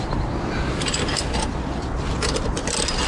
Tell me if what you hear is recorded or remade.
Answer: recorded